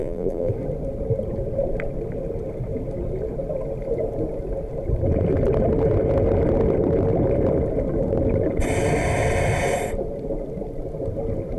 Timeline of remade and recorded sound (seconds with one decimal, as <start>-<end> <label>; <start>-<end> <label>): 0.0-0.5 remade; 0.5-11.6 recorded